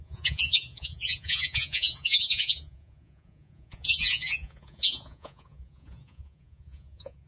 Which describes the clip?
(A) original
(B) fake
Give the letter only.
B